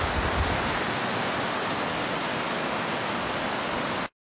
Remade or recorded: recorded